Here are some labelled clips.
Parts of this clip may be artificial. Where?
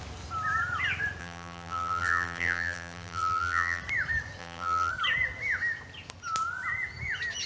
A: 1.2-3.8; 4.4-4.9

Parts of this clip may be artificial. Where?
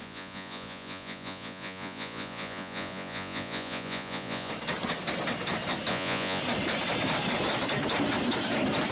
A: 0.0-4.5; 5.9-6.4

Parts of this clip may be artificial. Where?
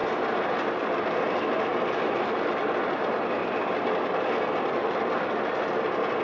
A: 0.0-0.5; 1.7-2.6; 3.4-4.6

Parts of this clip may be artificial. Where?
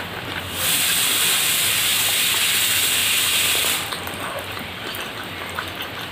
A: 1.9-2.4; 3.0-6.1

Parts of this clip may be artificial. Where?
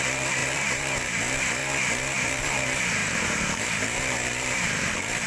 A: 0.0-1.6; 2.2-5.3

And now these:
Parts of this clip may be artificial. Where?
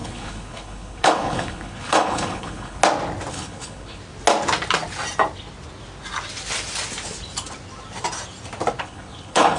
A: 0.0-2.8; 3.3-4.0; 8.8-9.6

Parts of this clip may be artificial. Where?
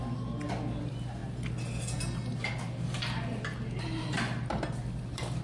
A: none